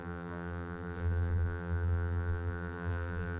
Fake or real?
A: fake